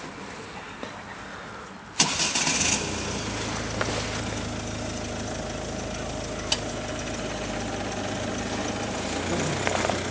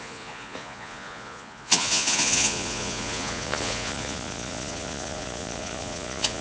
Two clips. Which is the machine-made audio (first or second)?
second